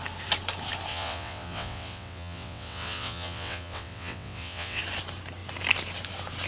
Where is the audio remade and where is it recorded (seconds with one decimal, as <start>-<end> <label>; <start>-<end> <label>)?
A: 0.0-0.9 recorded; 0.9-4.8 remade; 4.8-6.5 recorded